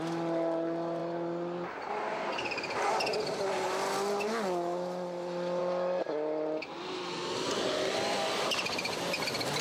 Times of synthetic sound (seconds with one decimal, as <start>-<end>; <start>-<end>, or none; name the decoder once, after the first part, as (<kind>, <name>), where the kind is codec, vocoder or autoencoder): none